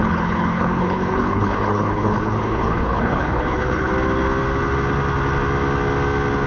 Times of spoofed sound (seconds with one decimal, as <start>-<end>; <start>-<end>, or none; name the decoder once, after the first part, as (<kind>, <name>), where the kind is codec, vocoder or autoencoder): 0.0-3.9 (codec, HILCodec)

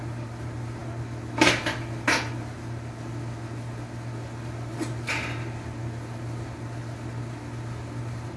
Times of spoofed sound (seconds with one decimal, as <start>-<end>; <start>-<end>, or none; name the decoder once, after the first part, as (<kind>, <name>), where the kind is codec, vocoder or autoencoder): none